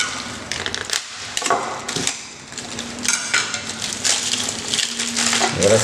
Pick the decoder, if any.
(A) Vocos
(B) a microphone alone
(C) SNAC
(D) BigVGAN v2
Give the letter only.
B